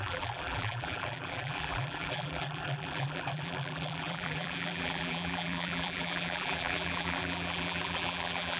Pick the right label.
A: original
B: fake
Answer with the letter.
B